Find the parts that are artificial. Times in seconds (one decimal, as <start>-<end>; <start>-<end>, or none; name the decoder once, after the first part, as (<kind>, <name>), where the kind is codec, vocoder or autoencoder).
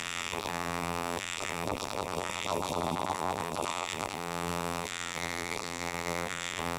0.0-6.8 (vocoder, BigVGAN v2)